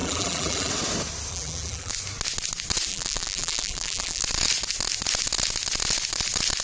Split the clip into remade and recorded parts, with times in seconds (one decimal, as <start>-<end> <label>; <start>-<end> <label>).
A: 0.0-0.7 remade; 0.7-1.3 recorded; 1.3-1.9 remade; 1.9-2.9 recorded; 2.9-4.2 remade; 4.2-6.6 recorded